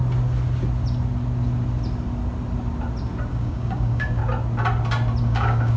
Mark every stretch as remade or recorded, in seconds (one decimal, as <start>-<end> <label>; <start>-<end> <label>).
0.0-3.3 recorded; 3.3-4.2 remade; 4.2-5.2 recorded; 5.2-5.8 remade